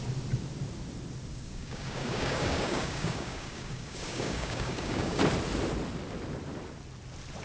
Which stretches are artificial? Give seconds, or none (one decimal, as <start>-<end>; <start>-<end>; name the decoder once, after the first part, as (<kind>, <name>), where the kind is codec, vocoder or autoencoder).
1.3-5.2 (codec, DAC)

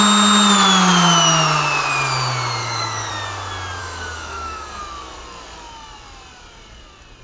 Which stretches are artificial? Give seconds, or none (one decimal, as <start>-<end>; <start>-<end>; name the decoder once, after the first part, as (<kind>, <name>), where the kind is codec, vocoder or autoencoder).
2.6-3.1 (codec, DAC); 3.8-4.8